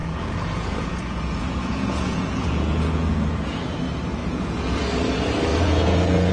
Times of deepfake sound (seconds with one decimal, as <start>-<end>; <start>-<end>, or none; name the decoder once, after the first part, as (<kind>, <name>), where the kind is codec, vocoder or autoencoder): 0.0-3.8 (vocoder, Vocos); 4.2-4.8; 5.5-6.3